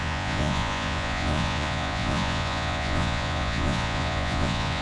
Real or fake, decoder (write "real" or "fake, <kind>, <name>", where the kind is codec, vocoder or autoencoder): fake, vocoder, Vocos